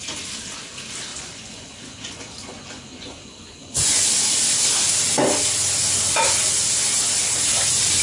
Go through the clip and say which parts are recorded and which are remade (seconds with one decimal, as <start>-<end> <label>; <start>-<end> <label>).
0.0-1.1 recorded; 1.1-4.0 remade; 4.0-8.0 recorded